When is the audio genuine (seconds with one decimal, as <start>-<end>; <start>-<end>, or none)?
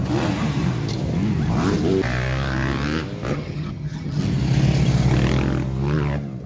0.0-3.3; 4.2-6.5